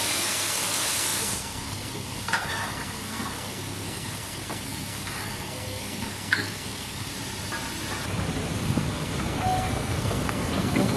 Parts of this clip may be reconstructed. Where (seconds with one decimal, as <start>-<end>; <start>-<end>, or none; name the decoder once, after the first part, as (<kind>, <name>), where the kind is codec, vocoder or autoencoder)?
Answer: 0.0-7.1 (codec, SNAC); 8.6-11.0